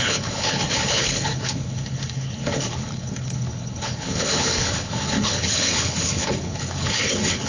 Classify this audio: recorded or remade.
remade